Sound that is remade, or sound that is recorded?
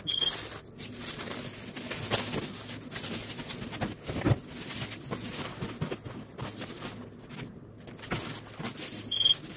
recorded